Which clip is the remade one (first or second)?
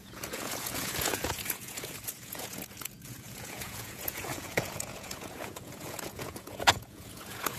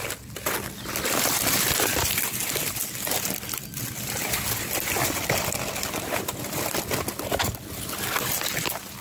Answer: first